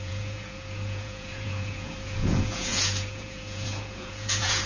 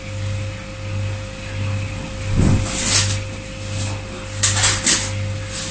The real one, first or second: second